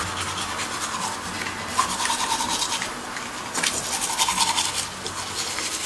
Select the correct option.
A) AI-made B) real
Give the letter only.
B